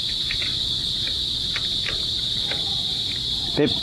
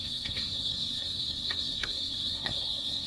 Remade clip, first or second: second